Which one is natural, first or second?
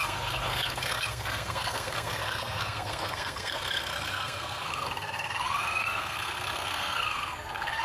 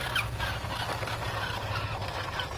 second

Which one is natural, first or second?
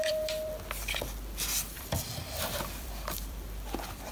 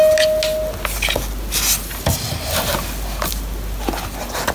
second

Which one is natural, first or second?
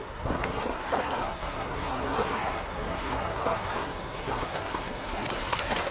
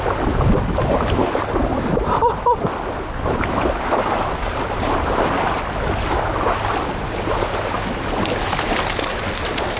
second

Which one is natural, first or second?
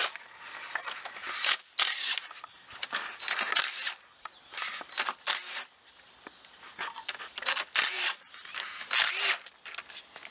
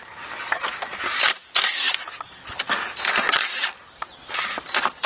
first